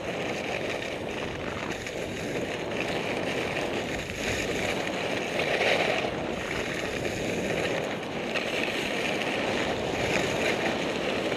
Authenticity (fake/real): real